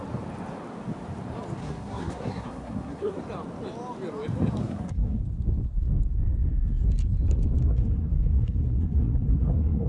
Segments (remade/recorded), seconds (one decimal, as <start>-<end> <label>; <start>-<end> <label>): 0.0-1.6 recorded; 1.6-3.2 remade; 3.2-4.6 recorded; 4.6-5.2 remade; 5.2-7.6 recorded; 7.6-9.9 remade